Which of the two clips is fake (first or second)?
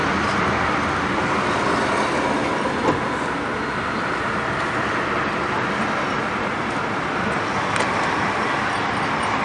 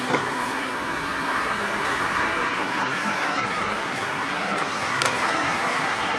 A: second